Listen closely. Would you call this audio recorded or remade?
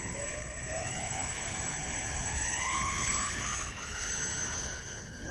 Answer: remade